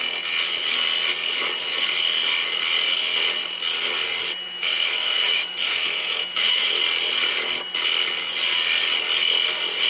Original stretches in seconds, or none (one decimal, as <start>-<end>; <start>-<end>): 0.0-4.4; 6.8-9.9